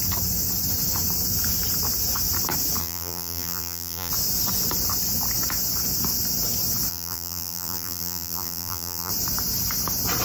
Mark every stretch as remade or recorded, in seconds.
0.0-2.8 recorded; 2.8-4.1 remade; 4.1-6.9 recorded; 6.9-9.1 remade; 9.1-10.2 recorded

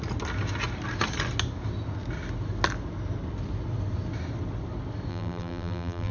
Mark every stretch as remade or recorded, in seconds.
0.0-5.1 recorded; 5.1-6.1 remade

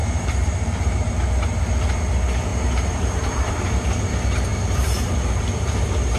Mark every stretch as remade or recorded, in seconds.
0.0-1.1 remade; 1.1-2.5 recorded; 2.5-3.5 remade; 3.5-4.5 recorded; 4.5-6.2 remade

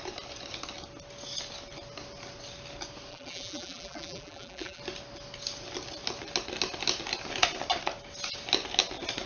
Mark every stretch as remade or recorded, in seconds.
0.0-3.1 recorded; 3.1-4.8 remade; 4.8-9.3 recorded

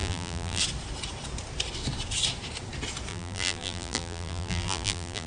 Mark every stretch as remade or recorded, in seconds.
0.0-0.6 remade; 0.6-3.1 recorded; 3.1-5.3 remade